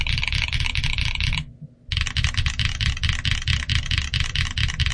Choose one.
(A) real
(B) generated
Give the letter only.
A